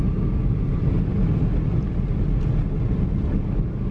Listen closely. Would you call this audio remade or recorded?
recorded